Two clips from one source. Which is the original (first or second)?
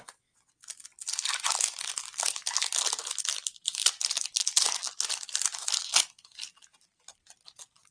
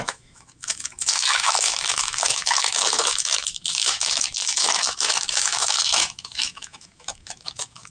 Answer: first